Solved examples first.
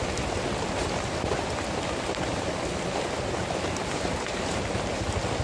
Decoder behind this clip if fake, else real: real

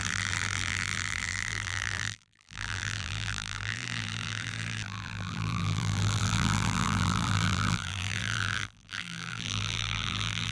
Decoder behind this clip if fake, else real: fake, vocoder, BigVGAN v2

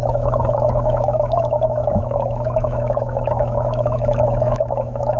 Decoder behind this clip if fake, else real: fake, autoencoder, DAC-VAE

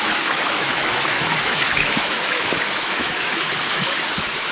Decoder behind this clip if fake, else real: fake, autoencoder, DAC-VAE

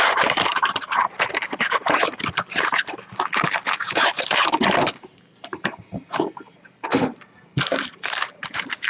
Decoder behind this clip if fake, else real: fake, vocoder, BigVGAN v2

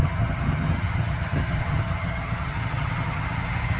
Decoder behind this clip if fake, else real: fake, vocoder, HiFi-GAN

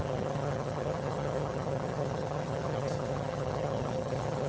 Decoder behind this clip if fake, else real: fake, vocoder, HiFi-GAN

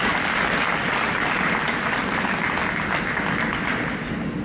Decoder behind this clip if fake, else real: real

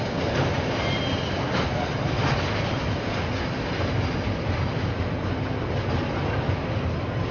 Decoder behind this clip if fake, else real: real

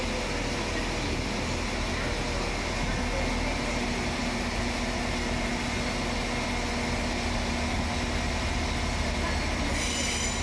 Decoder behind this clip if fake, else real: real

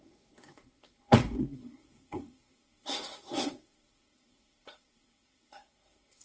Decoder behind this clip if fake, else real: fake, codec, SNAC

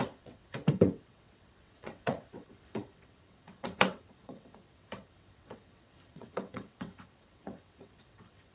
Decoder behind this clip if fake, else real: fake, vocoder, WaveNeXt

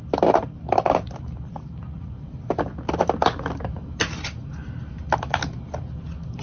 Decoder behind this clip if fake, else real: real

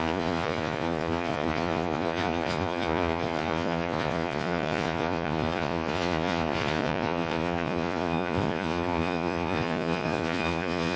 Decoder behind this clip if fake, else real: fake, vocoder, Vocos